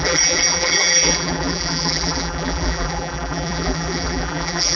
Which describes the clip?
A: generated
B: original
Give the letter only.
A